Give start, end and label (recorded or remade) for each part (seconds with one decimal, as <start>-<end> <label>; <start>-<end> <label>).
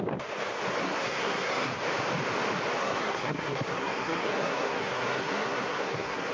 0.0-0.8 recorded; 0.8-1.7 remade; 1.7-2.8 recorded; 2.8-6.3 remade